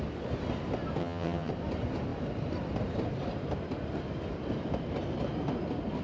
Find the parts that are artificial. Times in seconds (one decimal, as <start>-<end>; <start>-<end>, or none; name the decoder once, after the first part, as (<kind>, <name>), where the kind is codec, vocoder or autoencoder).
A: 1.0-1.5 (vocoder, HiFi-GAN)